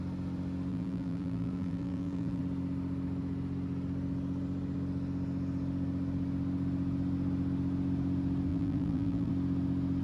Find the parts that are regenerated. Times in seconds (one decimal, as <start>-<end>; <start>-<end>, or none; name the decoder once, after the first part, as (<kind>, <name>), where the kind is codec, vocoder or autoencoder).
0.7-2.4 (vocoder, BigVGAN v2); 8.5-9.3